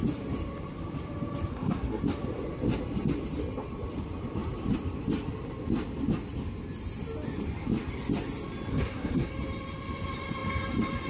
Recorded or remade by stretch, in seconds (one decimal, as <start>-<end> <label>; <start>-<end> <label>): 0.0-1.5 recorded; 1.5-2.0 remade; 2.0-8.7 recorded; 8.7-9.3 remade; 9.3-11.1 recorded